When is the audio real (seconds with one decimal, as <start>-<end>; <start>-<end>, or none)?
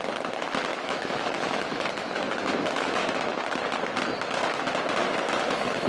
0.0-0.7; 3.6-5.0